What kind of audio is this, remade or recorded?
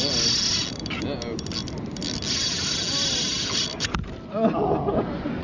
recorded